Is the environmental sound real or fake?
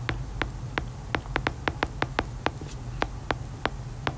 real